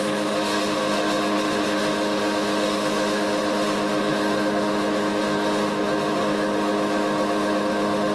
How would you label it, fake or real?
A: fake